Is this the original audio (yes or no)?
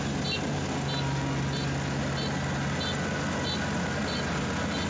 yes